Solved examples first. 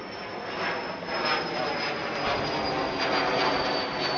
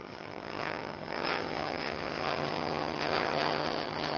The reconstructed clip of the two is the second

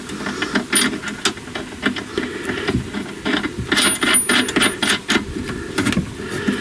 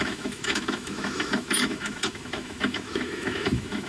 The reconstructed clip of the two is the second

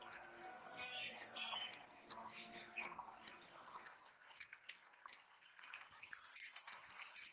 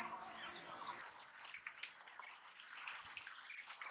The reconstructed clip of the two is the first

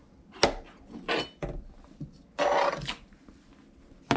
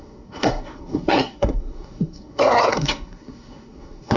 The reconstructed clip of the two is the second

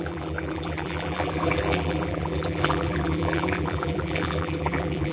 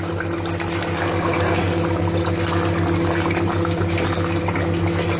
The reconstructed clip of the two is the first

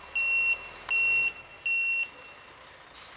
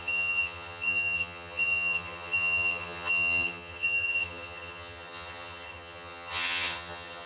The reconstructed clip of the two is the second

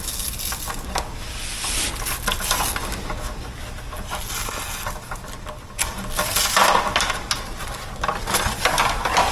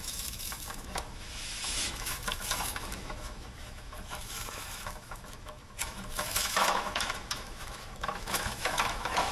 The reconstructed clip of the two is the second